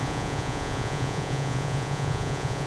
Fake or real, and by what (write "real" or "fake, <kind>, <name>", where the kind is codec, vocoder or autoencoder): fake, vocoder, Vocos